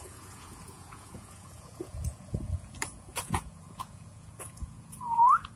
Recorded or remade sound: remade